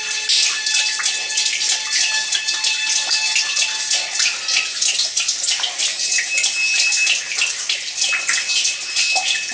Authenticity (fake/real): real